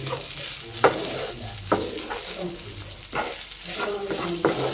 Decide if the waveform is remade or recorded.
recorded